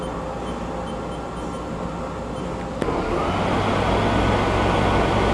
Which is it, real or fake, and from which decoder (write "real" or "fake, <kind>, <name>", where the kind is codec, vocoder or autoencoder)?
real